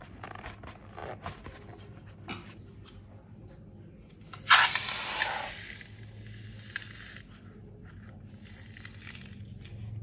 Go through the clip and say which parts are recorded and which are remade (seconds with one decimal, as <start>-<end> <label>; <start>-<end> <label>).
0.0-1.0 recorded; 1.0-1.8 remade; 1.8-10.0 recorded